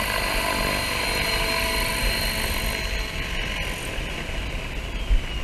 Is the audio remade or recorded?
recorded